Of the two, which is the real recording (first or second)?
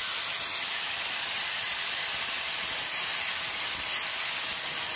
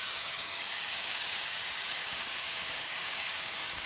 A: first